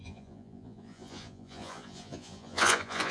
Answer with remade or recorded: remade